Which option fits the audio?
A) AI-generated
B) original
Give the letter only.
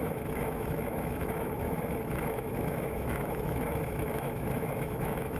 A